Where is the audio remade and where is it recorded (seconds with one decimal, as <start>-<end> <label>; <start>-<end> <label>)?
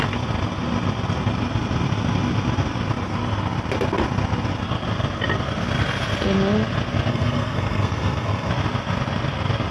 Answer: 0.0-7.1 recorded; 7.1-8.5 remade; 8.5-9.7 recorded